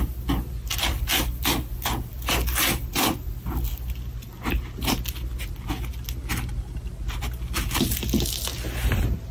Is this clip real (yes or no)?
yes